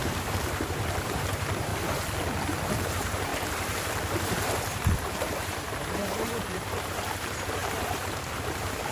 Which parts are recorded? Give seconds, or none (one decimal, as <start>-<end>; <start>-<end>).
1.7-2.9